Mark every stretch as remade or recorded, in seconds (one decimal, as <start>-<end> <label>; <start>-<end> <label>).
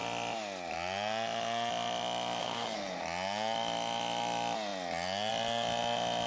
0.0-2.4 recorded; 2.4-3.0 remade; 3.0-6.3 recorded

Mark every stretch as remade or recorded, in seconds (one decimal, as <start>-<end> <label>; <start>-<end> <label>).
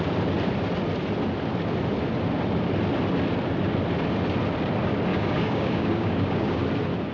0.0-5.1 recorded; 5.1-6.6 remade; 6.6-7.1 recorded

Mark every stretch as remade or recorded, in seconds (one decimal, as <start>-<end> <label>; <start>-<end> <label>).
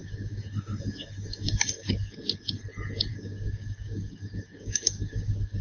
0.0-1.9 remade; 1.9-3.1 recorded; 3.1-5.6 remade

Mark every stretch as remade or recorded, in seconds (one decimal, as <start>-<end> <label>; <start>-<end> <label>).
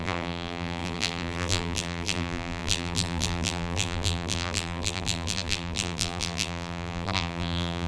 0.0-7.9 remade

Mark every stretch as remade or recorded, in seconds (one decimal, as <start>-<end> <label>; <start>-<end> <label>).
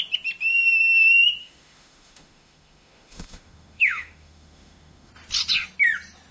0.0-1.4 recorded; 1.4-5.1 remade; 5.1-6.3 recorded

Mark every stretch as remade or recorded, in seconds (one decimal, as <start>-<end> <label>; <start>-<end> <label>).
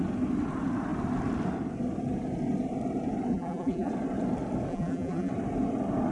0.0-3.3 recorded; 3.3-3.9 remade; 3.9-4.7 recorded; 4.7-5.3 remade; 5.3-6.1 recorded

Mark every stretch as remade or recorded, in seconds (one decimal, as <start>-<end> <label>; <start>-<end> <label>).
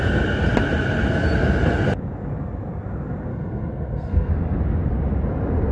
0.0-3.3 recorded; 3.3-4.3 remade; 4.3-5.7 recorded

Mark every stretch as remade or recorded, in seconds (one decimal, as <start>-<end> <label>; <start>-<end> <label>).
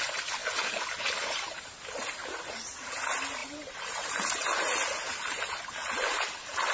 0.0-0.4 recorded; 0.4-1.5 remade; 1.5-3.4 recorded; 3.4-4.1 remade; 4.1-6.7 recorded